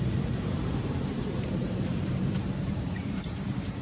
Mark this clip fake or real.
fake